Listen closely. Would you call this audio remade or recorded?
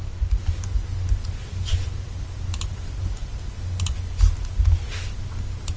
recorded